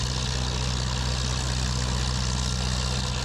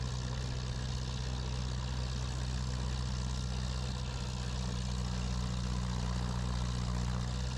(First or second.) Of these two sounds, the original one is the second